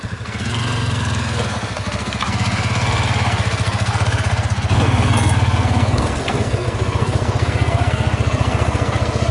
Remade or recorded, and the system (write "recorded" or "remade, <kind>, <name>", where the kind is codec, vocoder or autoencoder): remade, codec, SNAC